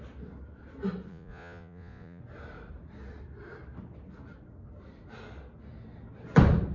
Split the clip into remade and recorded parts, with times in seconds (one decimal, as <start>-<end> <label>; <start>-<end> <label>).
0.0-1.1 recorded; 1.1-2.2 remade; 2.2-6.7 recorded